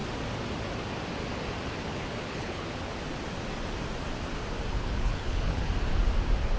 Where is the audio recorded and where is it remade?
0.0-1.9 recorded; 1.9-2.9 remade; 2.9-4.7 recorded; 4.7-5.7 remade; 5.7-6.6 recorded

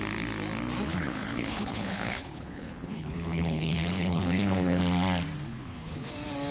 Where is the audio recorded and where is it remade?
0.0-0.9 recorded; 0.9-4.8 remade; 4.8-5.5 recorded; 5.5-6.1 remade; 6.1-6.5 recorded